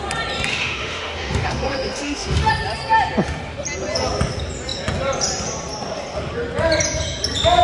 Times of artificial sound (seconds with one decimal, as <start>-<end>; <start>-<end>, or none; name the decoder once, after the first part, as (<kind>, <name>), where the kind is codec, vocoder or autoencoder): 0.5-2.5 (autoencoder, DAC-VAE)